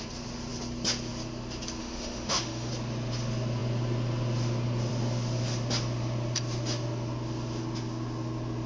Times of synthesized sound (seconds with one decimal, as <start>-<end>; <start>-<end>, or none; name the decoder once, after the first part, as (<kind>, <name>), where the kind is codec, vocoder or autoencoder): 1.8-2.7 (autoencoder, DAC-VAE)